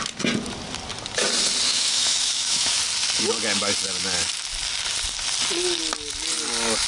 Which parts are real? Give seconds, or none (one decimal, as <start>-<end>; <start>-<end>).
0.0-1.7; 2.8-6.9